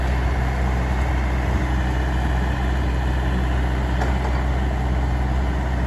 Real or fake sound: real